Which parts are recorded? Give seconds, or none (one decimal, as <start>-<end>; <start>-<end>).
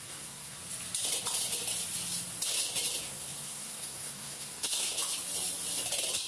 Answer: 0.6-3.0; 5.0-6.3